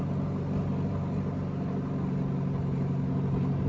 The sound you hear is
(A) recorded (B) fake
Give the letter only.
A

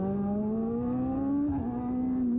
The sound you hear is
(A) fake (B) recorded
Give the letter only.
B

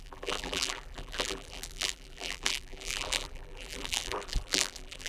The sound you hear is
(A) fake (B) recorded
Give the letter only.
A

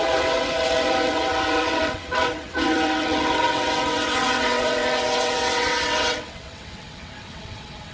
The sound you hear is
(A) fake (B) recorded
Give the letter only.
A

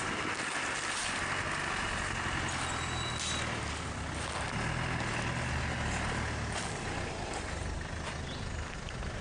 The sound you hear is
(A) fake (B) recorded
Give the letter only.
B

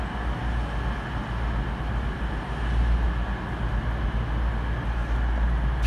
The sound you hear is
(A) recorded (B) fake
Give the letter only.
A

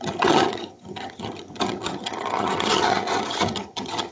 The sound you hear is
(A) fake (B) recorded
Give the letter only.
A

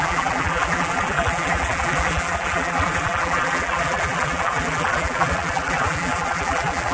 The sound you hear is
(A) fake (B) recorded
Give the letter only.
A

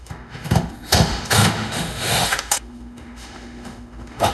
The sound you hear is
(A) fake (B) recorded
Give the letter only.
A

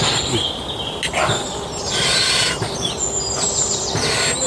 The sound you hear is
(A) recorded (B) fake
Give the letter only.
A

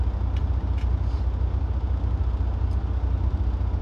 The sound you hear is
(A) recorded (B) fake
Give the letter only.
A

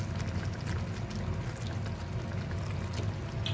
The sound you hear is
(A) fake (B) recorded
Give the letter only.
B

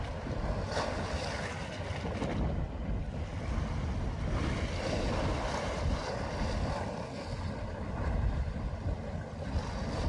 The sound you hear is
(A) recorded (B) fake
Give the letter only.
A